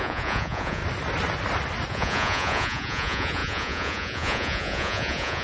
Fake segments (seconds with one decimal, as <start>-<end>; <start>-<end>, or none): 0.0-0.8; 1.9-5.4